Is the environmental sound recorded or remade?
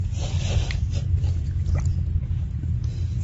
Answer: recorded